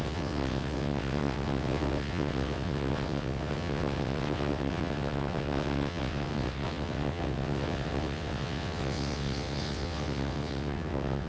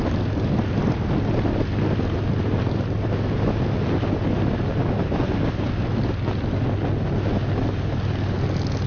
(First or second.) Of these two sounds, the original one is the second